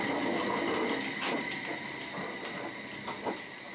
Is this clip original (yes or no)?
yes